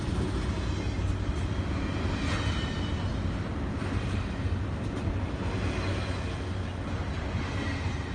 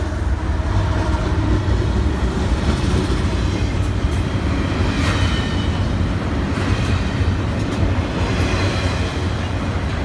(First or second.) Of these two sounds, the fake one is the second